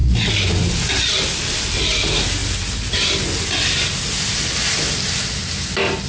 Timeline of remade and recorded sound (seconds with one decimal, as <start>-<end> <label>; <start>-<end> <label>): 0.0-2.4 recorded; 2.4-4.7 remade; 4.7-6.1 recorded